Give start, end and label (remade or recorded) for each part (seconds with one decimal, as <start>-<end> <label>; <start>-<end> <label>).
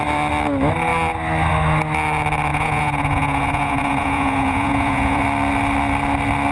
0.0-2.5 recorded; 2.5-5.2 remade; 5.2-6.5 recorded